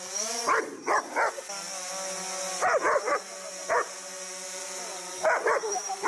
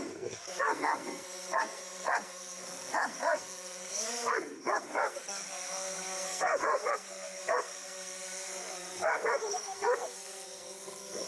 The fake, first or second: second